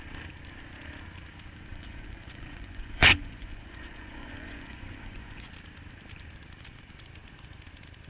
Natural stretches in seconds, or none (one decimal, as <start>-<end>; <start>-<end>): 0.0-1.7; 5.5-8.1